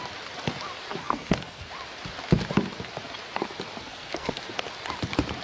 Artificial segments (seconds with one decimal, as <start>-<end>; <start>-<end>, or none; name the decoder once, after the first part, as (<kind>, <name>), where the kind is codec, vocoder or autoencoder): 1.0-1.7 (codec, SNAC); 3.8-4.4